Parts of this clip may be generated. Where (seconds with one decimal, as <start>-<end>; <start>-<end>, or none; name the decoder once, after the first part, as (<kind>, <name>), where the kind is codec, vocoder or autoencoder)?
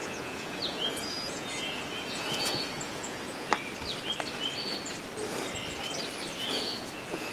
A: 0.0-3.5 (vocoder, Vocos); 6.3-7.3